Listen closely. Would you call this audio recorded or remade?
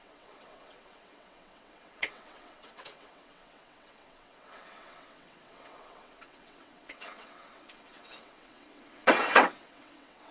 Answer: remade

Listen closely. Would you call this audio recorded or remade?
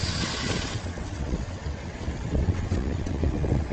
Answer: remade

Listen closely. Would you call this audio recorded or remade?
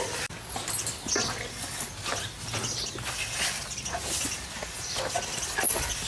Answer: recorded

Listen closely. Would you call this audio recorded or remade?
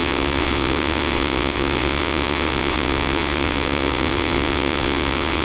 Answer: remade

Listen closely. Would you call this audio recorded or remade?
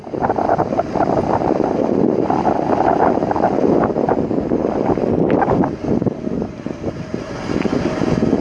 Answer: recorded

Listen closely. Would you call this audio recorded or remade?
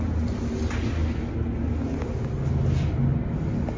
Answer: recorded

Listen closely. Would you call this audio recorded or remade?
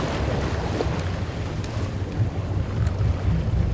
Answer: recorded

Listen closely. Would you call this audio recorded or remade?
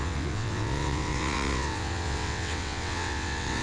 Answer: remade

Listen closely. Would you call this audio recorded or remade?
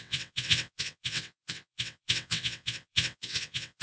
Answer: remade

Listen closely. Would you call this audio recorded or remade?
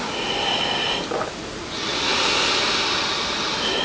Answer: recorded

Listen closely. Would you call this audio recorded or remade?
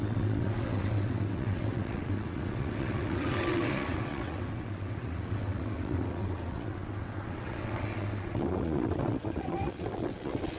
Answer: remade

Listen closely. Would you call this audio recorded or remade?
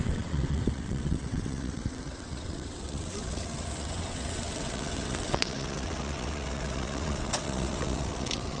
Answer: remade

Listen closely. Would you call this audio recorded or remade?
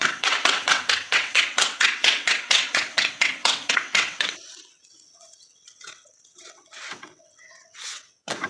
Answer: remade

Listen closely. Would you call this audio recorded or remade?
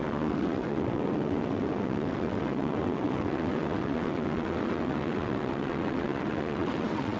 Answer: remade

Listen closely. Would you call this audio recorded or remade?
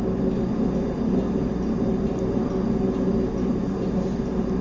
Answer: recorded